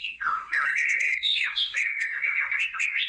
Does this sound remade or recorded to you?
remade